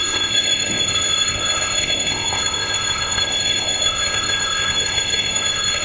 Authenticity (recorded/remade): remade